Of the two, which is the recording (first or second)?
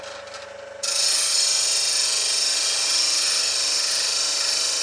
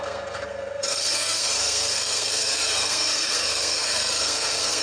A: first